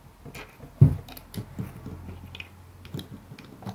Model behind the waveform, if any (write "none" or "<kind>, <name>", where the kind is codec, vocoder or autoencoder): none